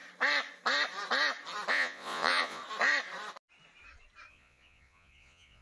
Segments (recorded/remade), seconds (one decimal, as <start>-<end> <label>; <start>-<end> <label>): 0.0-1.7 recorded; 1.7-2.6 remade; 2.6-4.3 recorded; 4.3-5.6 remade